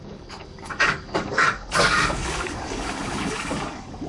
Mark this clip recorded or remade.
remade